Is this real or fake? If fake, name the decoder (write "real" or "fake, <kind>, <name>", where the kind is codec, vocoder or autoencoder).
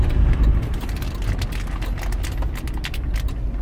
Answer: real